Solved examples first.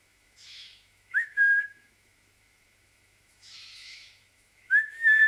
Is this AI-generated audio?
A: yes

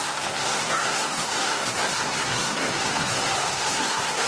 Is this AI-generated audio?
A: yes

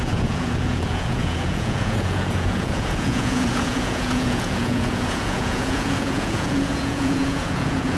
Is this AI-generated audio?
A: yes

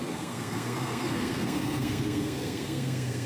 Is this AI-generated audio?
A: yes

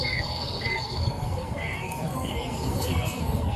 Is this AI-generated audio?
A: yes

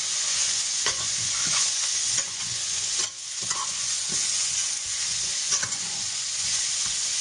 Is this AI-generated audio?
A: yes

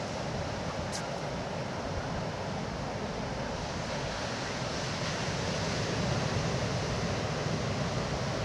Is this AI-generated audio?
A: no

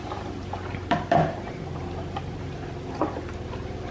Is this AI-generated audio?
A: yes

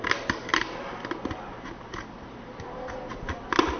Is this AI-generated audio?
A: no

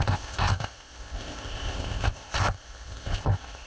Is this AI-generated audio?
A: yes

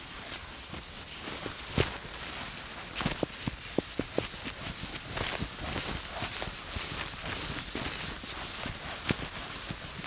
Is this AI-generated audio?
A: no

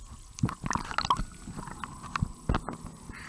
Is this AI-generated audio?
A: no